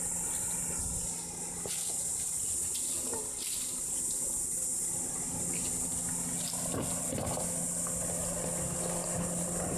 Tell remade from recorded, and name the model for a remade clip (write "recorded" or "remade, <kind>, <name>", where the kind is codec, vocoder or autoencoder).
recorded